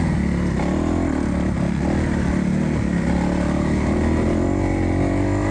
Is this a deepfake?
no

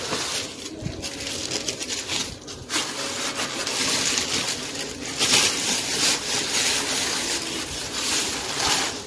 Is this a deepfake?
no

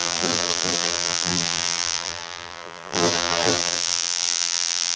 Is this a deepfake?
yes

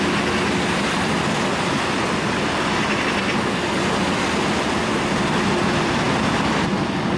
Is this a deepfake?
no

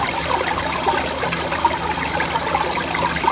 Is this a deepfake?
no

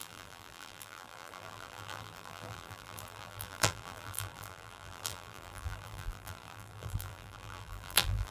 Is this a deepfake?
yes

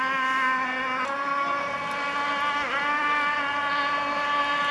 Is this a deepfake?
no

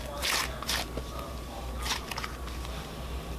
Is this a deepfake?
no